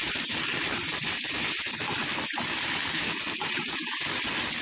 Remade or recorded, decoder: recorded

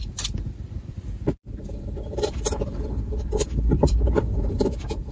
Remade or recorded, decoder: remade, vocoder, BigVGAN v2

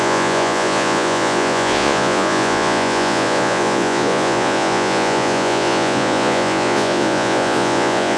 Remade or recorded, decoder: remade, vocoder, Vocos